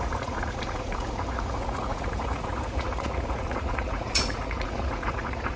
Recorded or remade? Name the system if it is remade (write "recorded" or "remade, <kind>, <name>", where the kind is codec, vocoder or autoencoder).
remade, vocoder, Vocos